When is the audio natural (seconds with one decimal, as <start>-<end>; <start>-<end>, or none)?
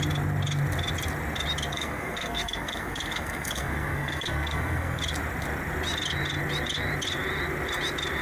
0.0-1.7; 5.0-8.2